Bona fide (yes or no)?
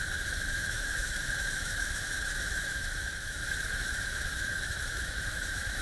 no